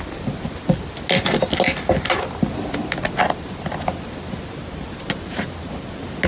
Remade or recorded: recorded